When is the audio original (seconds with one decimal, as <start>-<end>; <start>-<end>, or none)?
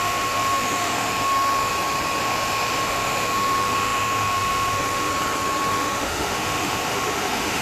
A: 1.7-2.2; 5.1-5.7